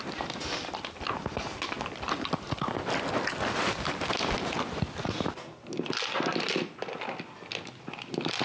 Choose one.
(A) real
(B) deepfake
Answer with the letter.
A